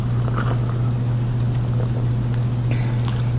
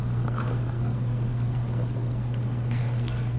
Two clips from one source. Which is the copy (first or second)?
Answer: second